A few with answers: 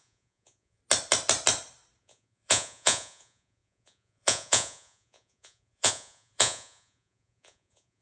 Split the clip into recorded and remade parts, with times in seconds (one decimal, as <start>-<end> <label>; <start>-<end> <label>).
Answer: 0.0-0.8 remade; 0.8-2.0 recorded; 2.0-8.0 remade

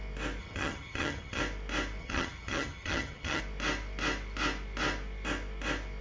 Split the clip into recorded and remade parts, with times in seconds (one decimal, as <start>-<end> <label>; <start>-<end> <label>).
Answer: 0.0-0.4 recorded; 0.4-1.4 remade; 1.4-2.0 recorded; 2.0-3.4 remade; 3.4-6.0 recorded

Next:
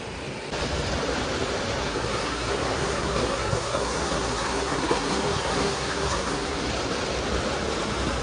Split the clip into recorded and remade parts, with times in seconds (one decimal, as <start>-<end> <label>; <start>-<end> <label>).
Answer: 0.0-1.8 recorded; 1.8-6.7 remade; 6.7-8.2 recorded

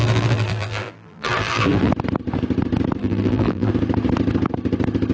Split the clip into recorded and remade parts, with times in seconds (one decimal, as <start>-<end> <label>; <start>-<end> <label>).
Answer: 0.0-1.9 remade; 1.9-3.0 recorded; 3.0-3.7 remade; 3.7-5.1 recorded

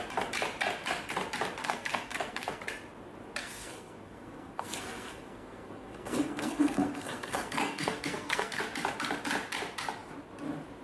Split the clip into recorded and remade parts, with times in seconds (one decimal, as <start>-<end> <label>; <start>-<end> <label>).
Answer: 0.0-1.6 recorded; 1.6-2.6 remade; 2.6-3.4 recorded; 3.4-8.6 remade; 8.6-10.8 recorded